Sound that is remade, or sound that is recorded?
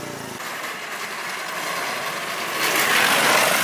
recorded